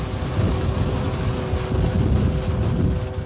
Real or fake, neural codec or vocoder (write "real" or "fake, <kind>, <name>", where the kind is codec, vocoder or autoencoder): real